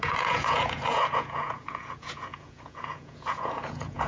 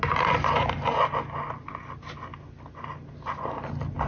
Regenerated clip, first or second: first